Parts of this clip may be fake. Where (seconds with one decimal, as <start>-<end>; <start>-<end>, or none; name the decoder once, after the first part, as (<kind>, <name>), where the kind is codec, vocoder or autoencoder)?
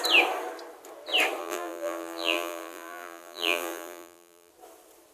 1.4-4.5 (vocoder, BigVGAN v2)